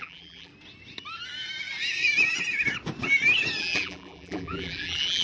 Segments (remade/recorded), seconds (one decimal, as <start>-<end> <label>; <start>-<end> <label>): 0.0-0.5 remade; 0.5-3.6 recorded; 3.6-5.2 remade